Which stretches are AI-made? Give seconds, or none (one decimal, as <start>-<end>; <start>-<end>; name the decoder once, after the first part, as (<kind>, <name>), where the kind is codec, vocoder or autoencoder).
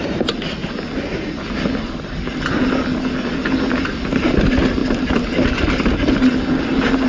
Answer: none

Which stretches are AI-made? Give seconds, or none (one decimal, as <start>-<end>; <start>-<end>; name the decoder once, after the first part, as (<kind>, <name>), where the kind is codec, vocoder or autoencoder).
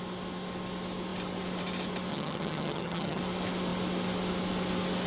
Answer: 2.1-3.2 (vocoder, HiFi-GAN)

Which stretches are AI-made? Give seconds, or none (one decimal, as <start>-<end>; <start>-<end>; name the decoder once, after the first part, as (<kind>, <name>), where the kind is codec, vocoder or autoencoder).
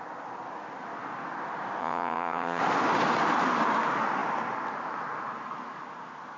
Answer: 1.8-2.6 (vocoder, HiFi-GAN)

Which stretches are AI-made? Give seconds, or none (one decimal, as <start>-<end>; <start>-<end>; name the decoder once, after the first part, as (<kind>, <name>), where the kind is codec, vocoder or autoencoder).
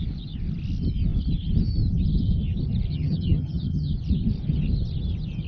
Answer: 2.9-3.9 (vocoder, HiFi-GAN)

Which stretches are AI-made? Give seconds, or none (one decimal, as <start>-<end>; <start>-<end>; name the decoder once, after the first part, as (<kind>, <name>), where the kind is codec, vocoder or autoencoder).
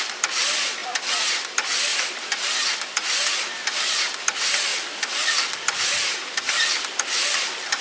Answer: none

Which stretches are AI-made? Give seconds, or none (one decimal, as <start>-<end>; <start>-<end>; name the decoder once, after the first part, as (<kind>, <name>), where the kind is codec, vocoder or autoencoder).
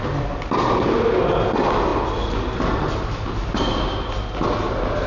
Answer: none